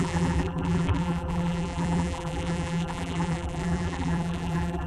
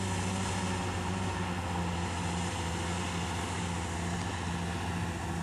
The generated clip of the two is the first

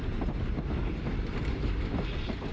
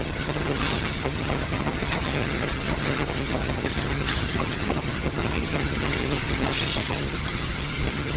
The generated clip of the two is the second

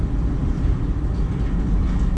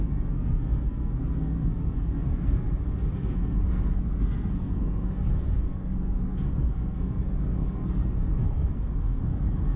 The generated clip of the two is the second